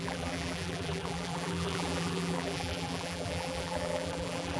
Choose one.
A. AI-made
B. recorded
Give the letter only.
A